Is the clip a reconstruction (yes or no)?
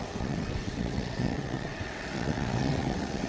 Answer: yes